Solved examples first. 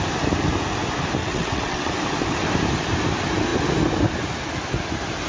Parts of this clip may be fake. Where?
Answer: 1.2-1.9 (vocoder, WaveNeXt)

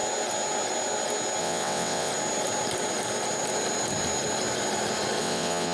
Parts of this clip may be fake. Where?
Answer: 1.4-2.1 (vocoder, WaveNeXt); 5.2-5.7

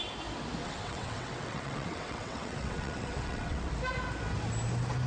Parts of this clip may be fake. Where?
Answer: 0.6-3.7 (vocoder, WaveNeXt)

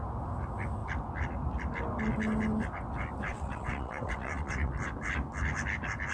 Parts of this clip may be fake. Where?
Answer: 3.3-4.7 (vocoder, WaveNeXt)

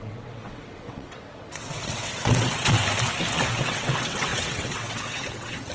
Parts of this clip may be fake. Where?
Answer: 0.0-2.8 (vocoder, WaveNeXt); 3.5-5.7

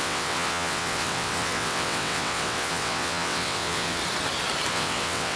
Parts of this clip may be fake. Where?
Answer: 0.0-4.0 (vocoder, WaveNeXt); 4.7-5.4

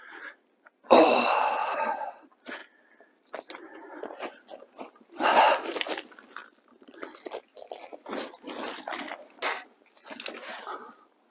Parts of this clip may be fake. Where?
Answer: 1.6-2.2 (vocoder, WaveNeXt)